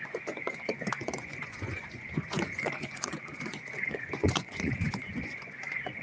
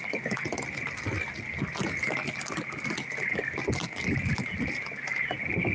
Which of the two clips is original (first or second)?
second